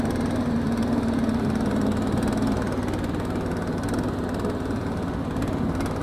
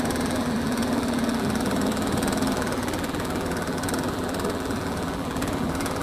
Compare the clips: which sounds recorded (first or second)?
first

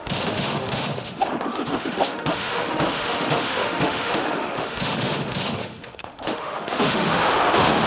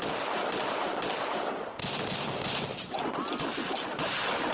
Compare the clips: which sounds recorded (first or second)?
second